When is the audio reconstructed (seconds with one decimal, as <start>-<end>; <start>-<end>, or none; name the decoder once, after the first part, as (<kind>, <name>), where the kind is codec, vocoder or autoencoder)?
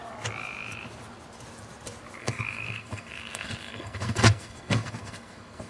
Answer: 2.2-5.7 (codec, SNAC)